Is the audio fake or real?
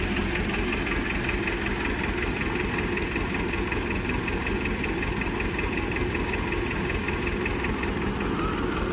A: real